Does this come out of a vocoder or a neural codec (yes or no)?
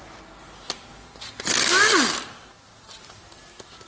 no